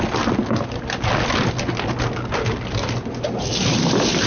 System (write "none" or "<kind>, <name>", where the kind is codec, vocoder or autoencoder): none